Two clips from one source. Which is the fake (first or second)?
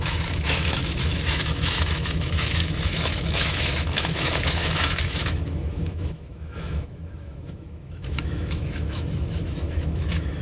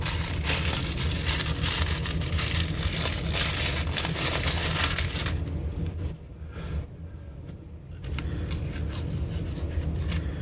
first